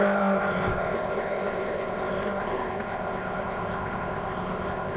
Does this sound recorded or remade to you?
remade